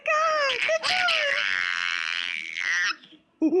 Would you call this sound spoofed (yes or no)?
no